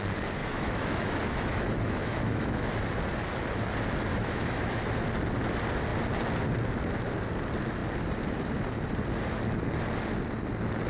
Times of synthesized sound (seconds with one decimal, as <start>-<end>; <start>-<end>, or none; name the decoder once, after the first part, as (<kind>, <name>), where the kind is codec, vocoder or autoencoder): 0.4-2.7 (autoencoder, DAC-VAE); 4.1-4.7